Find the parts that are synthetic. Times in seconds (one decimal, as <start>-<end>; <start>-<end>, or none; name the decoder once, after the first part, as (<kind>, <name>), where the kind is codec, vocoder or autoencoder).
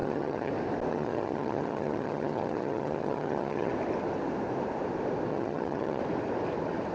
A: 0.0-0.5 (vocoder, HiFi-GAN); 0.9-3.7; 5.3-6.0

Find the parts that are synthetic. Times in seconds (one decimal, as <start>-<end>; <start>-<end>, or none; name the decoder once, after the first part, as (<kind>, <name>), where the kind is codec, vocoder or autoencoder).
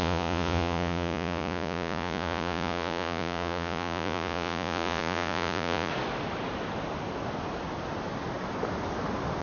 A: 0.0-5.9 (vocoder, Vocos)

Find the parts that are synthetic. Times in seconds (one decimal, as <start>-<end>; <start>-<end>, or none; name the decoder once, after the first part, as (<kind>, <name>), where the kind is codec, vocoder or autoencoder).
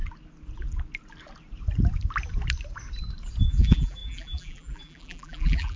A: 3.5-5.8 (vocoder, BigVGAN v2)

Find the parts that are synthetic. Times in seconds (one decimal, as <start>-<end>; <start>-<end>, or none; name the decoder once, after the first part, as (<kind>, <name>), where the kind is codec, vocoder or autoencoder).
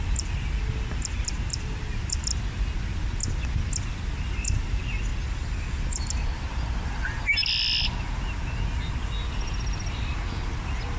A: none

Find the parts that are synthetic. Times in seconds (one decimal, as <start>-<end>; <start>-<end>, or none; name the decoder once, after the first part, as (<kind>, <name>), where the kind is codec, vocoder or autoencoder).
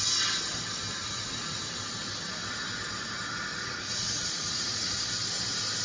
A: 1.0-1.7 (vocoder, Vocos); 3.5-5.0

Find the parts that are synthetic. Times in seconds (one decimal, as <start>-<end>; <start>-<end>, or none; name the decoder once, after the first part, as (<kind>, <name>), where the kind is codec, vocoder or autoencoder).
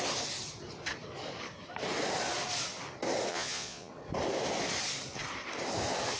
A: 3.3-3.9 (vocoder, Vocos)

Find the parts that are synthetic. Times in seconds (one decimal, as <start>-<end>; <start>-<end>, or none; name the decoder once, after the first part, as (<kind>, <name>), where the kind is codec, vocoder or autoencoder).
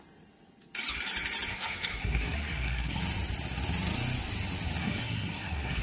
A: 1.5-3.0 (codec, SNAC); 4.8-5.8